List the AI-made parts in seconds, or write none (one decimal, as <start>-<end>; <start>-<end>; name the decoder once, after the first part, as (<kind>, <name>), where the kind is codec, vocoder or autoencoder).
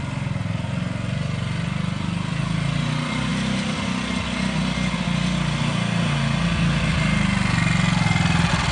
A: none